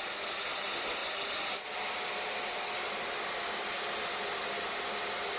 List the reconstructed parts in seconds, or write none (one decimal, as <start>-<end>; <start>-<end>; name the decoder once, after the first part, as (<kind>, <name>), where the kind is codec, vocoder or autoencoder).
none